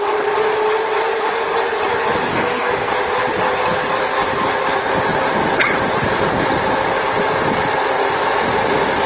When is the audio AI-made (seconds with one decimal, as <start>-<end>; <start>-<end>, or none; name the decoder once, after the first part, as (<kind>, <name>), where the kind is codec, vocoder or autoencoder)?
2.3-2.9 (codec, SNAC)